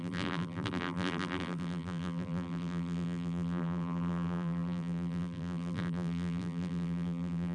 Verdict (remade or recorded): remade